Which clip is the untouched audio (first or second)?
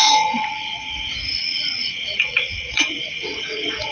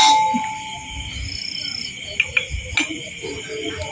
second